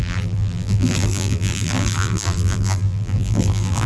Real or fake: fake